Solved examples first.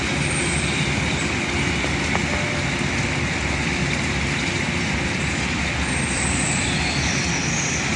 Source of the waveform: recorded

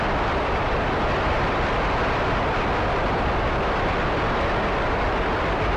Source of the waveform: recorded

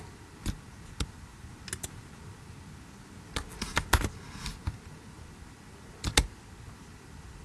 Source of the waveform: recorded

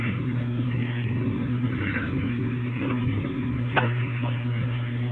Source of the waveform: remade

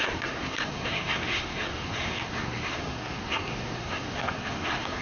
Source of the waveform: remade